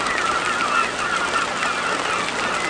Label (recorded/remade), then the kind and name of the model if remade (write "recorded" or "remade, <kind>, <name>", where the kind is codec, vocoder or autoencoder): recorded